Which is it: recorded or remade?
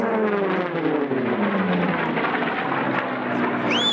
recorded